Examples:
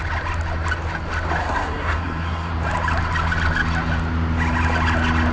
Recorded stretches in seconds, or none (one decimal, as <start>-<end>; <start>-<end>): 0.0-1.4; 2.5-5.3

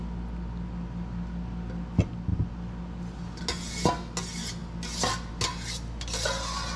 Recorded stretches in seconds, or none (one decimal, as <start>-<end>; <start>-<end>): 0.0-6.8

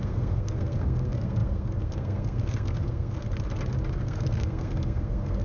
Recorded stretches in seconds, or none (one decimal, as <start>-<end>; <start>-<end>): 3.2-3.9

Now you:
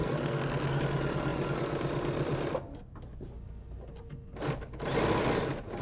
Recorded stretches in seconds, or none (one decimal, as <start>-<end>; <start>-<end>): 0.8-5.8

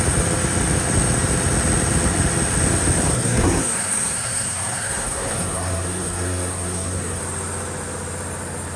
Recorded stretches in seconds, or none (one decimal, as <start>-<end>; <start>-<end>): 0.0-3.1; 7.2-8.8